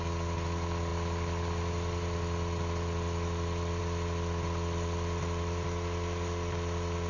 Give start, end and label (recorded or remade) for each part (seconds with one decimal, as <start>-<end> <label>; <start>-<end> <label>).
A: 0.0-7.1 recorded

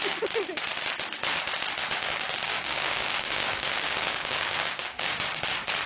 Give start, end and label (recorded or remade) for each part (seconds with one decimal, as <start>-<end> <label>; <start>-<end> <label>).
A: 0.0-1.9 recorded; 1.9-5.4 remade; 5.4-5.9 recorded

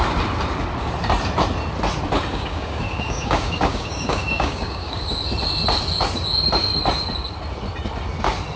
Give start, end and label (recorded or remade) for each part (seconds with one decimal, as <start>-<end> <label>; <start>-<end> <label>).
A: 0.0-2.3 recorded; 2.3-5.0 remade; 5.0-8.6 recorded

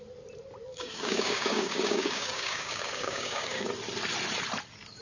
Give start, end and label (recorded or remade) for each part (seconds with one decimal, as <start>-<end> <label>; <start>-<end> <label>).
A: 0.0-0.7 recorded; 0.7-3.7 remade; 3.7-5.0 recorded